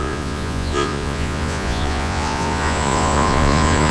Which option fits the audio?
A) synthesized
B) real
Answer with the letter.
A